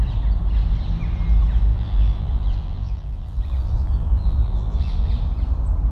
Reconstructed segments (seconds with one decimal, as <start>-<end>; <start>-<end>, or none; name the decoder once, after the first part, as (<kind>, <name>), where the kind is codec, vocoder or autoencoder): 1.7-5.1 (vocoder, BigVGAN v2)